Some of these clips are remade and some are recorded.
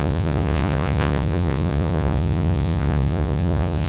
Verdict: remade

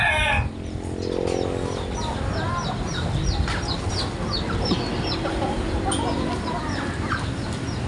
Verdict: recorded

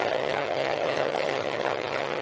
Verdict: remade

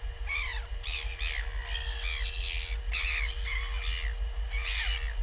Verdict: recorded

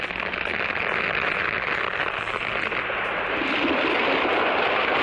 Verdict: recorded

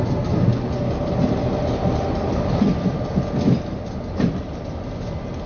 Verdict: recorded